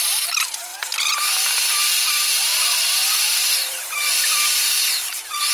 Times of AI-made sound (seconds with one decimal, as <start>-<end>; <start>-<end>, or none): 0.7-1.5; 2.5-5.5